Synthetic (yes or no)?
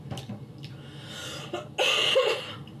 no